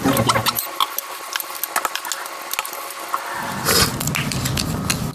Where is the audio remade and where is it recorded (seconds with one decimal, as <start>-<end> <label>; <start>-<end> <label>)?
0.0-5.1 recorded